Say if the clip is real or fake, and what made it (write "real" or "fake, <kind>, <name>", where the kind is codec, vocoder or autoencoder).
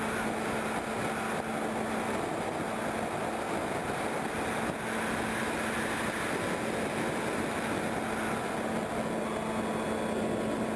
real